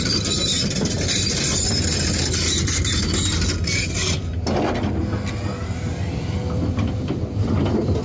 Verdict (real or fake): real